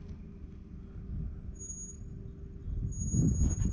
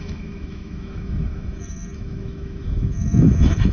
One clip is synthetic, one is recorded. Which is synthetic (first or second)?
second